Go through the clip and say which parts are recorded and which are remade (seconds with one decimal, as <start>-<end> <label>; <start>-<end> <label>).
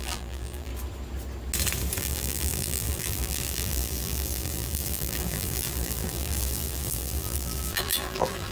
0.0-0.7 remade; 0.7-2.0 recorded; 2.0-8.5 remade